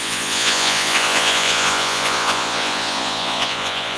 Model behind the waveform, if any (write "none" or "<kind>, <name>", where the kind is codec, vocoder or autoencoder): vocoder, Vocos